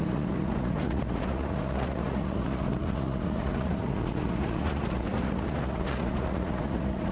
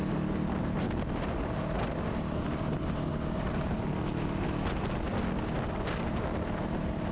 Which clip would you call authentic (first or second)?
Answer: second